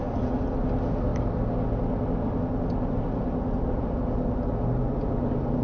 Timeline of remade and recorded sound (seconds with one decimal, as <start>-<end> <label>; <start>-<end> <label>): 0.0-5.6 recorded